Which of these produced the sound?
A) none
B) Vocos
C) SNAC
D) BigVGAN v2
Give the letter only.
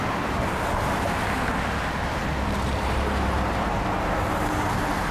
A